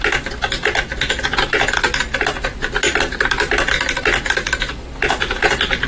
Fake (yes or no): no